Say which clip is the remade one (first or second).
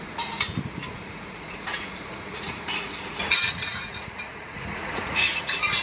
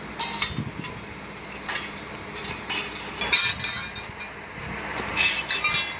first